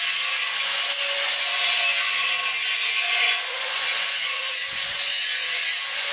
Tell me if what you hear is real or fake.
fake